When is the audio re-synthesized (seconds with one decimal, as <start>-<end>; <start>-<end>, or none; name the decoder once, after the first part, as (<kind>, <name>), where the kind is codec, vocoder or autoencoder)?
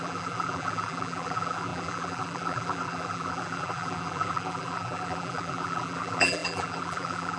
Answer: 0.0-7.4 (vocoder, BigVGAN v2)